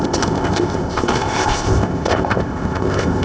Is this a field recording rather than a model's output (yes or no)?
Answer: no